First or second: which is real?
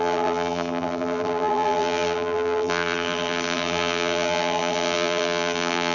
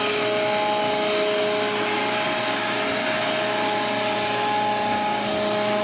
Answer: second